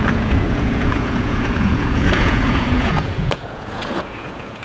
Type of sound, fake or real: fake